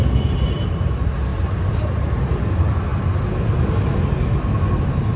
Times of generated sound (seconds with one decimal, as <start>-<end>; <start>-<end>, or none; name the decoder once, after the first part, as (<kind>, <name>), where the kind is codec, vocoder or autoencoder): 1.3-1.8 (vocoder, BigVGAN v2)